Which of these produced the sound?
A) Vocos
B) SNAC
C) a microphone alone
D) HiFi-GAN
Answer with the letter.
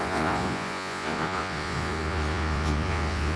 A